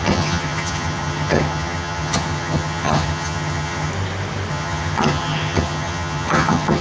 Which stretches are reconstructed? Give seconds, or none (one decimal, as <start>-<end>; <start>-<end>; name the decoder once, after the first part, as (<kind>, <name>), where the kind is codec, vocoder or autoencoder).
0.0-3.9 (vocoder, HiFi-GAN); 4.5-6.8

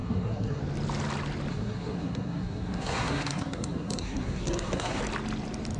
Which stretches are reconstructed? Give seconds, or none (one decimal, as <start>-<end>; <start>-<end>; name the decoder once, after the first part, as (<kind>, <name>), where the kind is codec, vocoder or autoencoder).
0.0-0.6 (codec, SNAC); 1.5-5.0

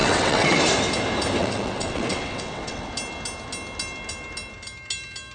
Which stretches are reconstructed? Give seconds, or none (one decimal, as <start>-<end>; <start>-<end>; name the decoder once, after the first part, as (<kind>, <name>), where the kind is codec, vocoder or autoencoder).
0.0-0.5 (vocoder, WaveNeXt); 1.4-2.9

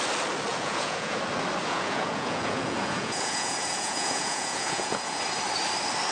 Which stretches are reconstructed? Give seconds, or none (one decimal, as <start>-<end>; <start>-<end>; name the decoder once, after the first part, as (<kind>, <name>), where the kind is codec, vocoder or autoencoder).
0.5-1.2 (vocoder, Vocos); 1.6-5.2